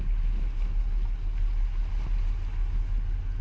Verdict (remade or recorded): recorded